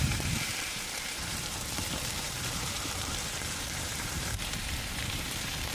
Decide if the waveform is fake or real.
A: fake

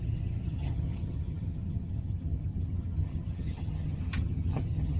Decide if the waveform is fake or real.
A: fake